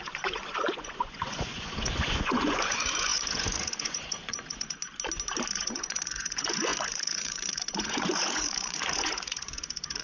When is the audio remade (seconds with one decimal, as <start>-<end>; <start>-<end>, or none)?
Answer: 0.0-4.8; 5.5-10.0